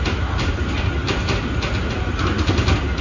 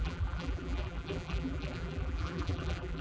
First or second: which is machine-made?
second